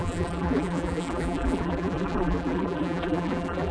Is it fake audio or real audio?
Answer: fake